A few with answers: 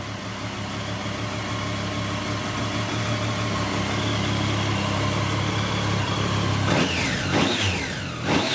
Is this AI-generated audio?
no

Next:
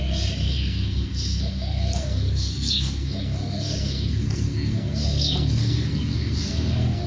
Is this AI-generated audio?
yes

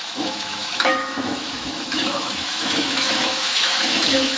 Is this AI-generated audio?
yes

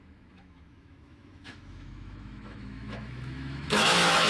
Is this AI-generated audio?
yes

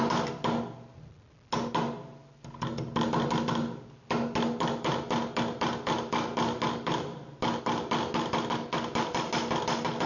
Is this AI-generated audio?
no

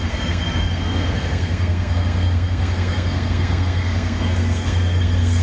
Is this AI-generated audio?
yes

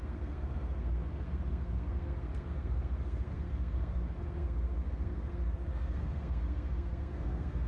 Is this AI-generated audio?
yes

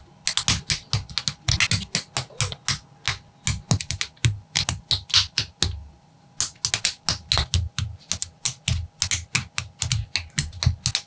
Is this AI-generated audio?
no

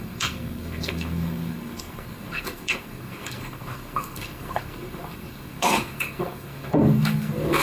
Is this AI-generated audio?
yes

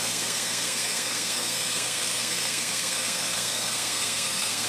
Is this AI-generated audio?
yes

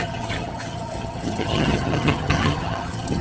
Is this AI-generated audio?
yes